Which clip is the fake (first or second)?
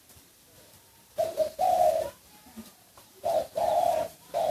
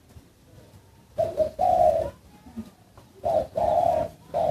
first